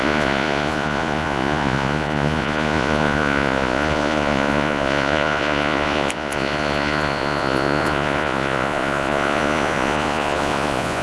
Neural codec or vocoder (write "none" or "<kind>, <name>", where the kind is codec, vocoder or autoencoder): vocoder, Vocos